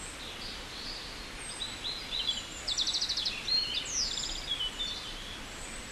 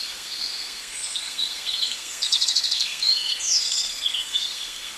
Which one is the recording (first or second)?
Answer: first